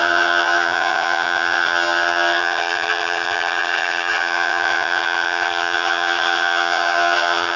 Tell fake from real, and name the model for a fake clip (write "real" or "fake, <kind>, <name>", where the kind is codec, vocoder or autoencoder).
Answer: fake, vocoder, HiFi-GAN